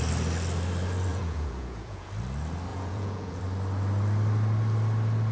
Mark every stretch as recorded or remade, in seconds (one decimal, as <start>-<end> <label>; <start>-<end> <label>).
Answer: 0.0-1.1 recorded; 1.1-2.1 remade; 2.1-2.7 recorded; 2.7-3.4 remade; 3.4-5.3 recorded